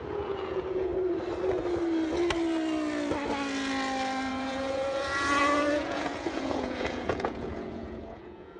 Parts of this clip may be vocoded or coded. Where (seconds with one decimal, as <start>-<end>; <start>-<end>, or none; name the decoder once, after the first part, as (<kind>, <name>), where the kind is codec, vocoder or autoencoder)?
0.0-0.9 (vocoder, Vocos); 4.3-8.6